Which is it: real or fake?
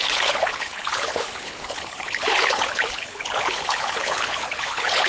fake